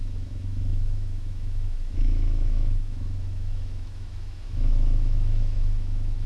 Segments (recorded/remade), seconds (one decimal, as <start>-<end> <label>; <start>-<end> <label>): 0.0-6.3 remade